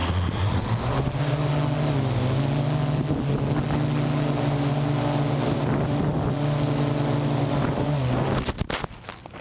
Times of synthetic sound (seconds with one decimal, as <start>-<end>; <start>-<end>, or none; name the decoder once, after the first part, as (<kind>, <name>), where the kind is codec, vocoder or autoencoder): 0.0-0.6 (vocoder, Vocos)